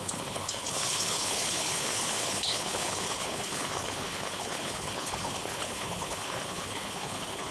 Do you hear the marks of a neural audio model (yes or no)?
yes